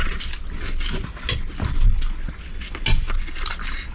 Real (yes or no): yes